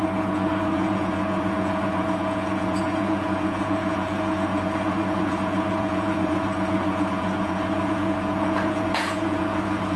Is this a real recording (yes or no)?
no